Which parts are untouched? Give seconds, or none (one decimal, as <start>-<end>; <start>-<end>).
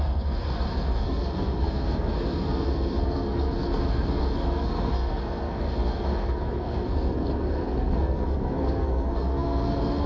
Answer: none